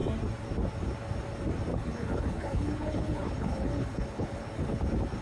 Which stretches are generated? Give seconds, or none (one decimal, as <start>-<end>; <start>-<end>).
1.7-4.8